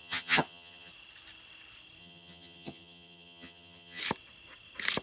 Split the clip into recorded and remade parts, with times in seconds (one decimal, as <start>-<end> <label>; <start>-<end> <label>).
0.0-0.9 remade; 0.9-2.0 recorded; 2.0-4.0 remade; 4.0-5.0 recorded